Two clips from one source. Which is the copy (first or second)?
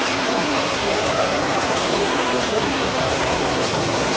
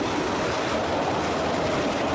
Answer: first